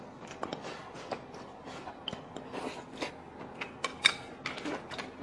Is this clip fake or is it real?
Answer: real